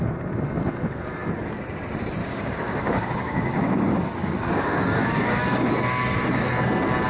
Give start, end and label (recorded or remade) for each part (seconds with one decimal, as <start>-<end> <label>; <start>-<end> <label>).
0.0-2.2 recorded; 2.2-6.5 remade; 6.5-7.1 recorded